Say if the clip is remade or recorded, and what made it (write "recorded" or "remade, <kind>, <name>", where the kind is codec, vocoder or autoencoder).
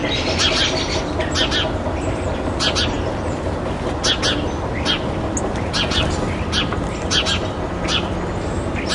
recorded